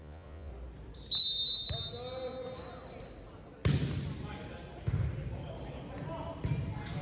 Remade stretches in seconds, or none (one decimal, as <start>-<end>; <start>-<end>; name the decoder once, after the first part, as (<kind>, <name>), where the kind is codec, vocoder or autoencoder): 0.0-0.5 (vocoder, Vocos)